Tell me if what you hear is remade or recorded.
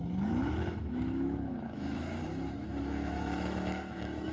remade